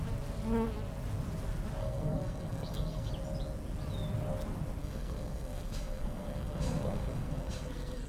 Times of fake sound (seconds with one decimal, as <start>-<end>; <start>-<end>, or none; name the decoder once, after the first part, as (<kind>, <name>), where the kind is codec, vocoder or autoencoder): 1.8-3.1 (codec, SNAC); 4.8-8.1